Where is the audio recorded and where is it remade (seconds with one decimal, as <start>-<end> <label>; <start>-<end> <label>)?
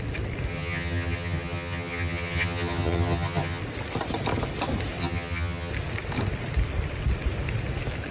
0.0-0.5 recorded; 0.5-3.6 remade; 3.6-5.0 recorded; 5.0-5.7 remade; 5.7-8.1 recorded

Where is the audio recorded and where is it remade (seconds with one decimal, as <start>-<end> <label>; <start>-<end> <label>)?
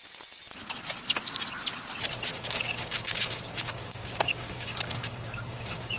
0.0-2.3 recorded; 2.3-6.0 remade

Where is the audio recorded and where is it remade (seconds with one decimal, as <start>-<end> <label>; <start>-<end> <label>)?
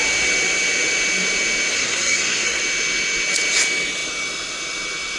0.0-1.7 recorded; 1.7-2.6 remade; 2.6-5.2 recorded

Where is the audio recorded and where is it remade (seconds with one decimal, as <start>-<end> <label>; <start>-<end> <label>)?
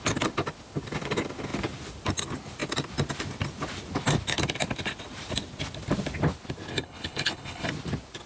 0.0-6.7 recorded; 6.7-7.7 remade; 7.7-8.3 recorded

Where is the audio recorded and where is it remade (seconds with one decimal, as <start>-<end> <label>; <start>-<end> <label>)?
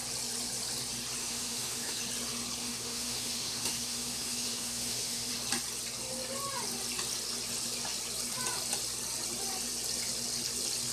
0.0-1.2 recorded; 1.2-2.0 remade; 2.0-2.6 recorded; 2.6-5.3 remade; 5.3-10.9 recorded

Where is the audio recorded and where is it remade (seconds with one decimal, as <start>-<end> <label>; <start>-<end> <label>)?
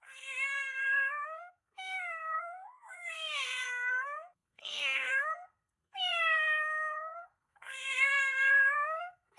0.0-9.4 remade